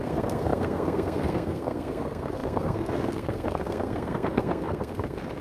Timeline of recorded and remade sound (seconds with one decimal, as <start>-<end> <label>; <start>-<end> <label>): 0.0-5.4 remade